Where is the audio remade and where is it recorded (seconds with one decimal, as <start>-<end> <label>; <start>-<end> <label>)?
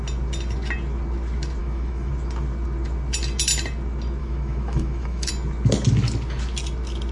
0.0-1.6 recorded; 1.6-2.1 remade; 2.1-4.2 recorded; 4.2-5.3 remade; 5.3-7.1 recorded